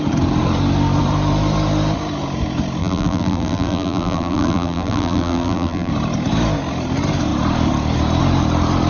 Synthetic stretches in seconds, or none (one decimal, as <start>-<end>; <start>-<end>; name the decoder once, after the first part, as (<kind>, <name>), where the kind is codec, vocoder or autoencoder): 2.8-5.9 (vocoder, BigVGAN v2)